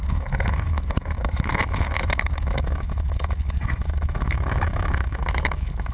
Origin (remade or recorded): remade